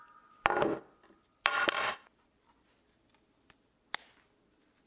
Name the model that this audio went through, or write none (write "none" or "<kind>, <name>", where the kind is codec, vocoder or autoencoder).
none